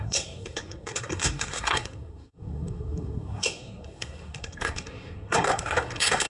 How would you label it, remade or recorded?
remade